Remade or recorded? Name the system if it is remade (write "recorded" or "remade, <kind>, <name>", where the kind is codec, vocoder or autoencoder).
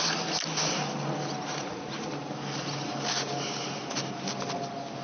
recorded